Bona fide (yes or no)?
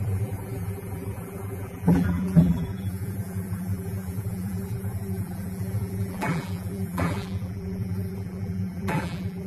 no